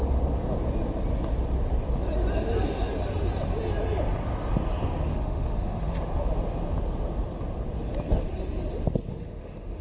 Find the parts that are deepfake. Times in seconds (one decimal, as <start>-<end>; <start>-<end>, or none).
5.1-6.0; 9.1-9.8